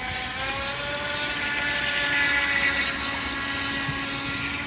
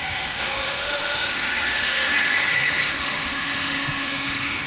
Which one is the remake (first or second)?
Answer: second